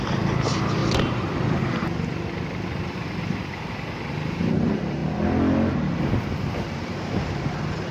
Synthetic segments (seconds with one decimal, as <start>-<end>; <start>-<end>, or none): 0.0-0.8; 4.4-5.0; 6.0-7.9